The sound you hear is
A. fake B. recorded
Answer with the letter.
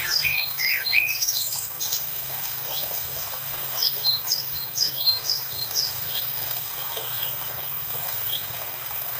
A